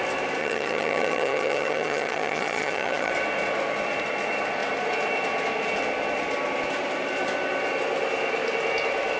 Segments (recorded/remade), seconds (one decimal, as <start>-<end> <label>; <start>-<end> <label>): 0.0-0.4 recorded; 0.4-3.1 remade; 3.1-9.2 recorded